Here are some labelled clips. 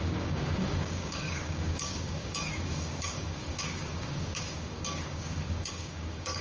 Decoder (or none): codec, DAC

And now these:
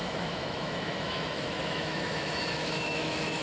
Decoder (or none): autoencoder, DAC-VAE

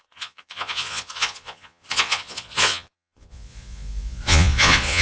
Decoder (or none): vocoder, Vocos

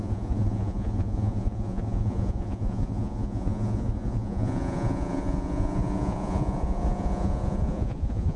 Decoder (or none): vocoder, Vocos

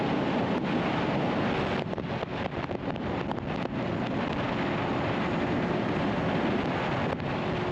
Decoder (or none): none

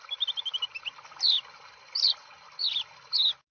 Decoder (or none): none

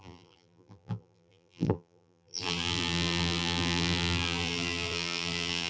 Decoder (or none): vocoder, BigVGAN v2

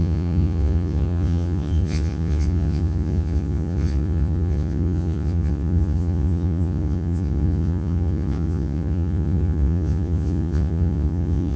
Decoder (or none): vocoder, Vocos